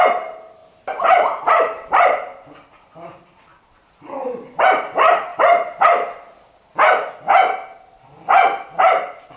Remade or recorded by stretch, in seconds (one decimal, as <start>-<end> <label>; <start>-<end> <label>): 0.0-0.6 recorded; 0.6-4.6 remade; 4.6-9.4 recorded